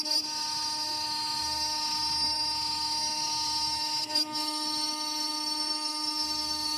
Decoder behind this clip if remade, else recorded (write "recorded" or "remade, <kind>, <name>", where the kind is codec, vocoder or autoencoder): remade, autoencoder, DAC-VAE